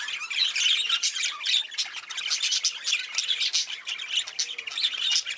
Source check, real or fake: real